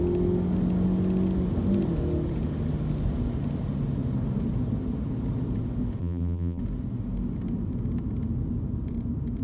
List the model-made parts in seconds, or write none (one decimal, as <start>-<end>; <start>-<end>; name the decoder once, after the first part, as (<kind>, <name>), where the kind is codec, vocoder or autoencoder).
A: 6.0-6.6 (vocoder, BigVGAN v2)